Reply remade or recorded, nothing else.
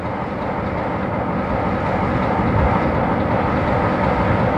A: recorded